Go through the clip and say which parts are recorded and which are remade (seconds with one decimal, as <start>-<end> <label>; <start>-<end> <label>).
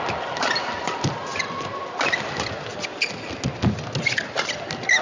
0.0-5.0 recorded